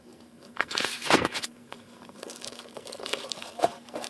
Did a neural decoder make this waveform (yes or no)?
yes